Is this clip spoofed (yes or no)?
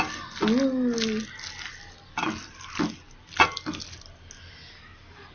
no